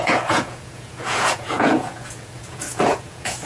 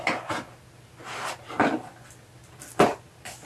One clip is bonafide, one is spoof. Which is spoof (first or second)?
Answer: first